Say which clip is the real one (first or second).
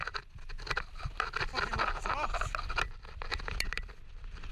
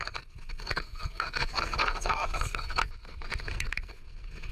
first